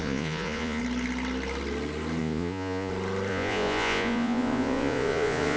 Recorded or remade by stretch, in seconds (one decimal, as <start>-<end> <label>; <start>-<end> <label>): 0.0-0.8 remade; 0.8-2.2 recorded; 2.2-2.9 remade; 2.9-3.3 recorded; 3.3-5.6 remade